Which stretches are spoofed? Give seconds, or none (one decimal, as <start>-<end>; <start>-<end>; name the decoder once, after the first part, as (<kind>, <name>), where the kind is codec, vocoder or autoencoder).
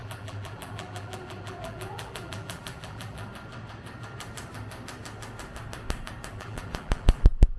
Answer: 0.0-3.3 (vocoder, BigVGAN v2); 6.3-7.6